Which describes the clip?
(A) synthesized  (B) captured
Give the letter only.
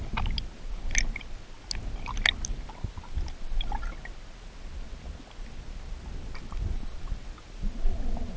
B